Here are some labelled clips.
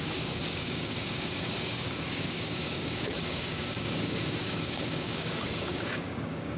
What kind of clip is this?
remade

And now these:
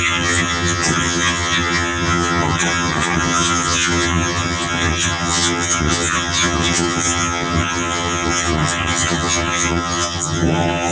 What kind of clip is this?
remade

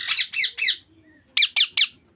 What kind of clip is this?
recorded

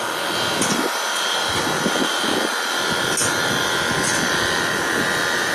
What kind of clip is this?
recorded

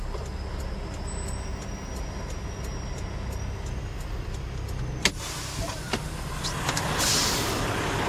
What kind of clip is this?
recorded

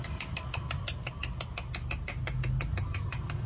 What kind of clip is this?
recorded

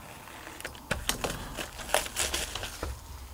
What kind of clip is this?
recorded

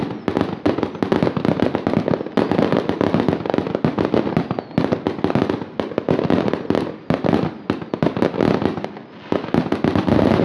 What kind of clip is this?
recorded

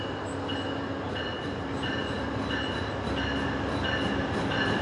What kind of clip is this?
recorded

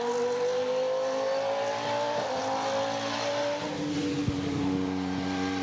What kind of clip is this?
recorded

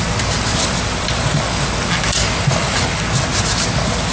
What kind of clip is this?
recorded